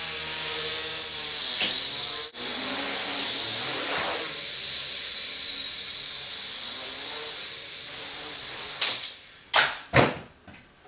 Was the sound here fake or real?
real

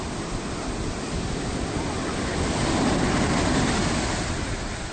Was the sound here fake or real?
real